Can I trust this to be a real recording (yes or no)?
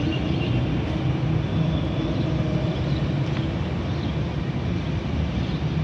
yes